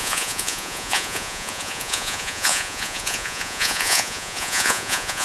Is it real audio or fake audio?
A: fake